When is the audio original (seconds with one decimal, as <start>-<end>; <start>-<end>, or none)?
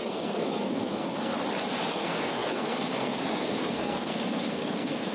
1.3-1.9